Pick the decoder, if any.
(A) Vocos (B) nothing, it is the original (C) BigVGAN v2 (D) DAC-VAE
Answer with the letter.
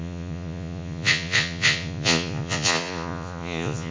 A